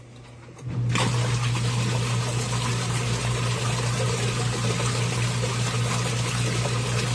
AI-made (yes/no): no